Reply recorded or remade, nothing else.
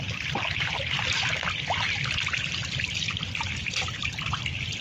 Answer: recorded